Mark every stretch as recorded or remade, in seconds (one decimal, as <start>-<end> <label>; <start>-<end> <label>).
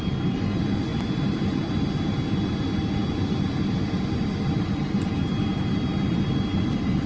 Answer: 0.0-7.1 recorded